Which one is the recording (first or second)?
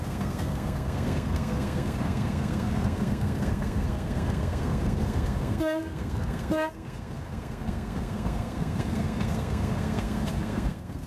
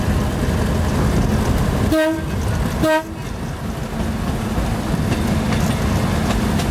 second